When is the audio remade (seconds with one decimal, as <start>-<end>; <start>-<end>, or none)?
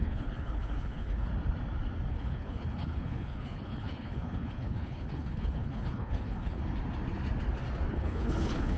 0.0-1.3; 2.1-6.6; 7.9-8.8